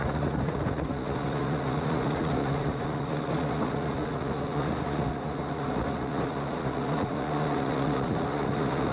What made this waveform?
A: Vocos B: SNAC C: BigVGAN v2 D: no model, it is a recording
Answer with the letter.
A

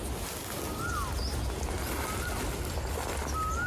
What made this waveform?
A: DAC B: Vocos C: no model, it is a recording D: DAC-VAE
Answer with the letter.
C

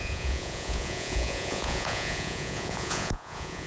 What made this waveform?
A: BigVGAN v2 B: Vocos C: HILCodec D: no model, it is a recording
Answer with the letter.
B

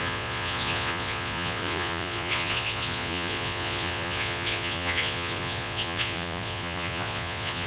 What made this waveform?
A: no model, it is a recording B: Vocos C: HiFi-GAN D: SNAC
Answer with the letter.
B